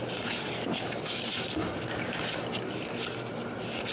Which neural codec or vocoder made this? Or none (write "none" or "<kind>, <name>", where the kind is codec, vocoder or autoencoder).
none